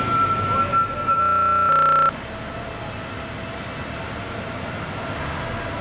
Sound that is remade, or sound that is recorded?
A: recorded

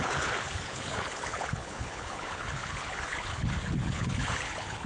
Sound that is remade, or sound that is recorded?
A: remade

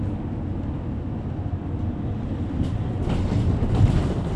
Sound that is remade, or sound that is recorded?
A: recorded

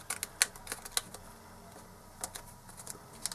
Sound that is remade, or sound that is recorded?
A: recorded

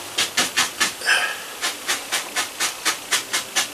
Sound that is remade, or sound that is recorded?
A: recorded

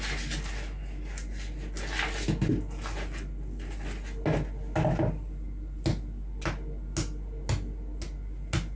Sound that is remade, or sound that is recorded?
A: recorded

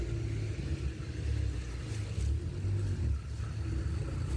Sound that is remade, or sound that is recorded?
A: recorded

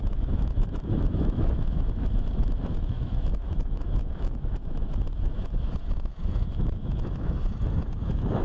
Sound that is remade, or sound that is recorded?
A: remade